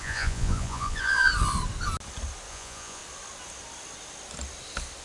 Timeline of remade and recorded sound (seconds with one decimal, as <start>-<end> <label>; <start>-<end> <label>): 0.0-1.3 remade; 1.3-2.5 recorded; 2.5-3.0 remade; 3.0-5.0 recorded